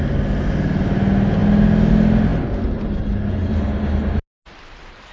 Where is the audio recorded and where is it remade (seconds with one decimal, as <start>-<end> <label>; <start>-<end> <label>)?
0.0-5.1 recorded